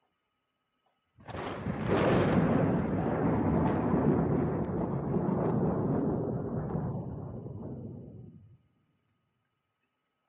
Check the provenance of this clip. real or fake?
real